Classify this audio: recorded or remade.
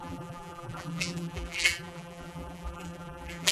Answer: remade